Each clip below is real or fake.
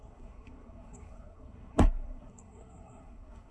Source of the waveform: fake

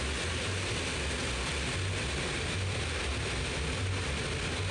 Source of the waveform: real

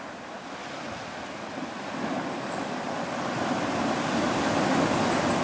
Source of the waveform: real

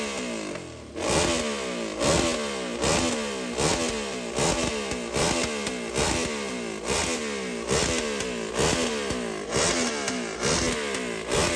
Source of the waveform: real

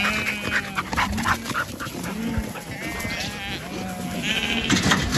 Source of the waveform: real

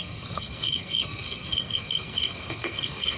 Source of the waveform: fake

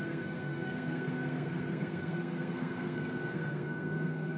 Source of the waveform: fake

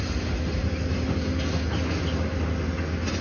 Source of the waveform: real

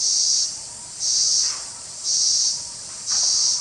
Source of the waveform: real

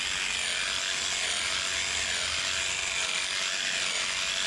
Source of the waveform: real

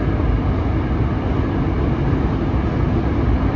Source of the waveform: real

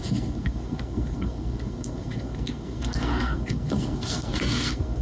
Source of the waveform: fake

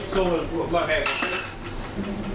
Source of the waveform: real